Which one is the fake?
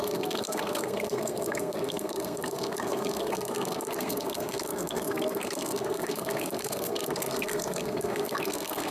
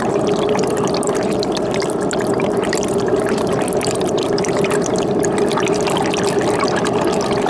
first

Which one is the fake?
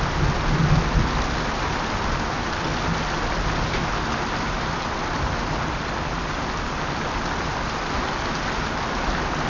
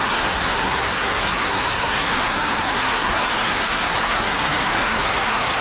second